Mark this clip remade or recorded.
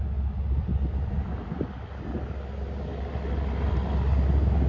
recorded